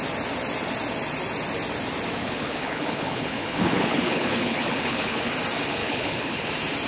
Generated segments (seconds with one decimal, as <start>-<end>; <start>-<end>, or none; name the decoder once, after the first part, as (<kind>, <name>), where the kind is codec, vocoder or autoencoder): 2.2-5.3 (codec, HILCodec); 5.8-6.5

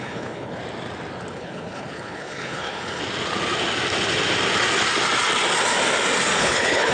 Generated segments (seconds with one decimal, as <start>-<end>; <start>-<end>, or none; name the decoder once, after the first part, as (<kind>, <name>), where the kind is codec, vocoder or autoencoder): 0.0-0.6 (codec, HILCodec); 1.3-3.0; 6.4-6.9